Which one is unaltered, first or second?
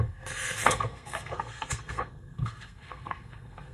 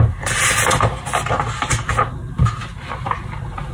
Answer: second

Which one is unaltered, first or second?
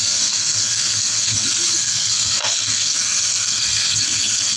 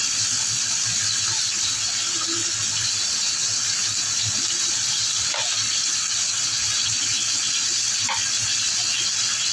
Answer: second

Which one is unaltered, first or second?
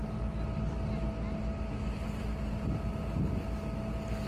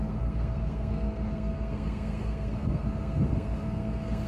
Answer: first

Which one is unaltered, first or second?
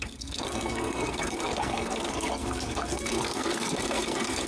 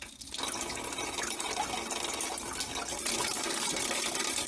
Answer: second